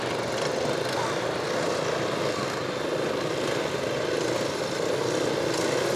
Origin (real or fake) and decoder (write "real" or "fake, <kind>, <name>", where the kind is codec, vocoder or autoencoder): real